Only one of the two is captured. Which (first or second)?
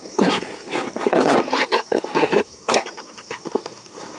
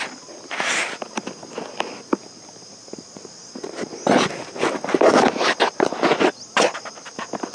second